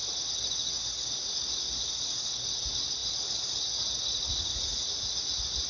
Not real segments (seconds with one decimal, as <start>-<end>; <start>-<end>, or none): none